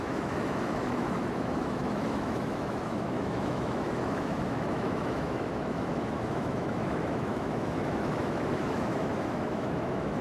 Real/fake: fake